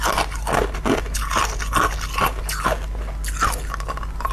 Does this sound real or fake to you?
real